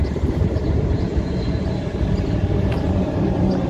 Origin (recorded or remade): remade